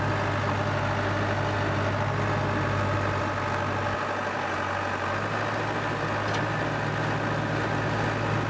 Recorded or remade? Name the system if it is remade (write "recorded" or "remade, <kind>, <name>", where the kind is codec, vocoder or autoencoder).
recorded